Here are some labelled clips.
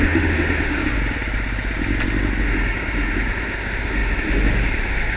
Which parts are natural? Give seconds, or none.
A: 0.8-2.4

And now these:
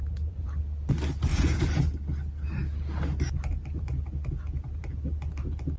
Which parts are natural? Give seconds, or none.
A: 0.6-1.3; 1.8-5.8

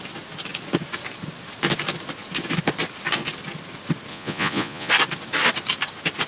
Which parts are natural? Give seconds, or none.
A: 0.0-4.1; 4.9-6.3

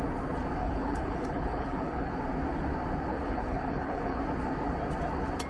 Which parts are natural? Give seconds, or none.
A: 0.0-0.6; 2.1-3.1; 4.2-5.5

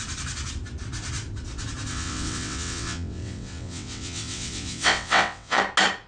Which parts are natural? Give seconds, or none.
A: 0.0-1.9; 5.6-6.1

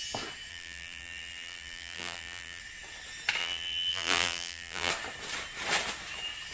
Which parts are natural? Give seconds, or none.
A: 0.0-0.5; 2.6-3.4; 4.9-6.5